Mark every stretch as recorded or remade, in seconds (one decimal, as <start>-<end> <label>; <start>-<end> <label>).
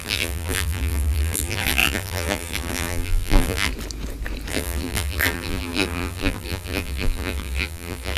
0.0-3.7 remade; 3.7-4.5 recorded; 4.5-8.2 remade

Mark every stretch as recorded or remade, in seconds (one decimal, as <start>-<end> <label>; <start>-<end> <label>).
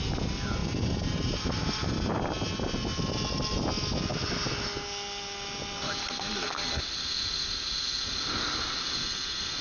0.0-0.6 recorded; 0.6-2.5 remade; 2.5-9.6 recorded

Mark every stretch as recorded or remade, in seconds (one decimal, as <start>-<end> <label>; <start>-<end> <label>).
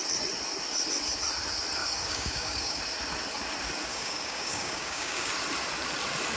0.0-1.8 recorded; 1.8-2.8 remade; 2.8-3.9 recorded; 3.9-5.3 remade; 5.3-6.4 recorded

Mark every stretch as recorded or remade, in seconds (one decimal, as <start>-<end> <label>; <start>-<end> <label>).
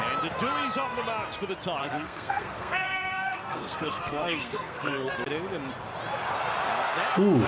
0.0-1.8 recorded; 1.8-5.1 remade; 5.1-7.5 recorded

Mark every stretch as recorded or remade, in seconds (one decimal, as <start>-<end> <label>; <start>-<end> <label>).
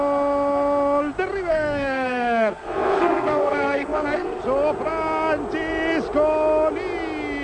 0.0-1.5 recorded; 1.5-4.4 remade; 4.4-7.4 recorded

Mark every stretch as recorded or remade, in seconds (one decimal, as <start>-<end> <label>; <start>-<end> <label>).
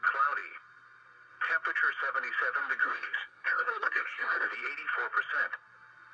0.0-2.8 recorded; 2.8-4.5 remade; 4.5-6.1 recorded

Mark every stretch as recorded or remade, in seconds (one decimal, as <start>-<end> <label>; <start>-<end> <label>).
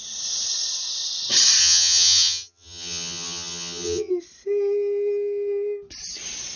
0.0-1.6 recorded; 1.6-4.1 remade; 4.1-6.6 recorded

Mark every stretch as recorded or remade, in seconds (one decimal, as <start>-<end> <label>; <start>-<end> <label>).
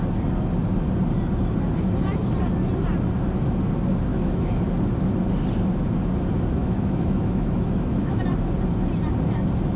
0.0-4.1 recorded; 4.1-4.6 remade; 4.6-6.6 recorded; 6.6-8.2 remade; 8.2-9.8 recorded